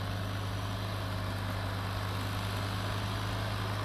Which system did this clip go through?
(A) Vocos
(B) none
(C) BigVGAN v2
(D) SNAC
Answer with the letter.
B